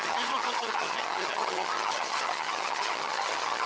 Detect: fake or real fake